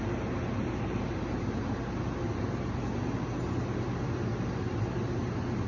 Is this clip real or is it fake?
real